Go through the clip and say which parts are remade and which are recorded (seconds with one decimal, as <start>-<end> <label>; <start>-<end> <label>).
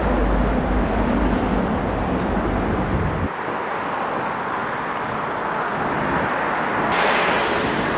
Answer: 0.0-8.0 recorded